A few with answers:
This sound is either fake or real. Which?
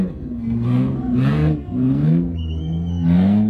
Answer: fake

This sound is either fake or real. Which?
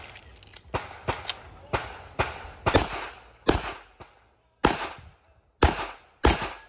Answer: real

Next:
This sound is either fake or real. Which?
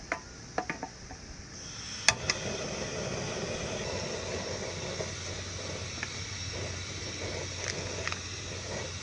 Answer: real